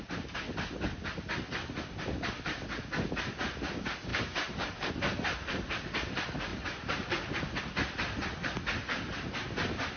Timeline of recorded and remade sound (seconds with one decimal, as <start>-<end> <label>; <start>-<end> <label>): 0.0-4.1 recorded; 4.1-4.9 remade; 4.9-6.5 recorded; 6.5-7.6 remade; 7.6-10.0 recorded